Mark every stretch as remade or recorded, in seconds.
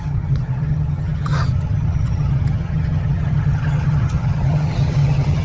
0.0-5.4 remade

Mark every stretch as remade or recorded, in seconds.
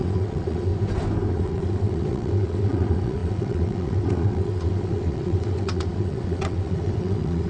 0.0-0.7 remade; 0.7-1.3 recorded; 1.3-7.5 remade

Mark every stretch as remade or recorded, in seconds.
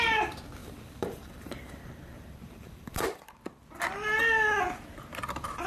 0.0-0.6 recorded; 0.6-3.2 remade; 3.2-5.7 recorded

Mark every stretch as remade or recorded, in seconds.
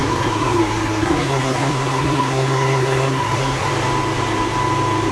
0.0-3.7 remade; 3.7-5.1 recorded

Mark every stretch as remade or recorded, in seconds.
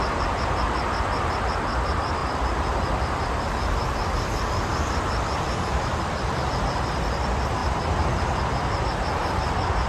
0.0-9.9 remade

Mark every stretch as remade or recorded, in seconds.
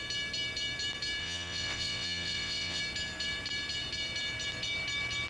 0.0-1.2 recorded; 1.2-2.8 remade; 2.8-5.3 recorded